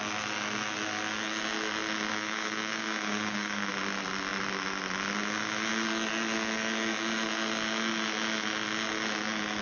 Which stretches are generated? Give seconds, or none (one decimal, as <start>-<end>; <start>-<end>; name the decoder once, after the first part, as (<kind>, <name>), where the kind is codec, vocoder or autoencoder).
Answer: 2.1-3.7 (codec, DAC)